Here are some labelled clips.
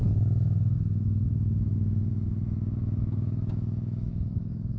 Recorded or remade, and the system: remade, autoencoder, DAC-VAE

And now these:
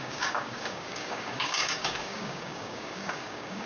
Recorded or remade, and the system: remade, codec, DAC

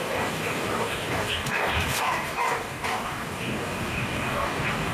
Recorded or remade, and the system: remade, codec, DAC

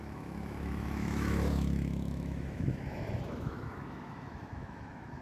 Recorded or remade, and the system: remade, autoencoder, DAC-VAE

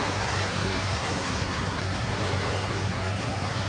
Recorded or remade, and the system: remade, codec, SNAC